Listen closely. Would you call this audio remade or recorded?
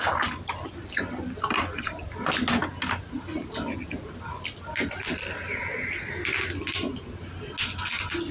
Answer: recorded